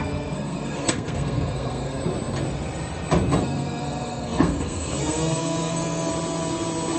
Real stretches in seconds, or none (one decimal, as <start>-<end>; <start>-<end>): 2.0-3.4; 6.1-7.0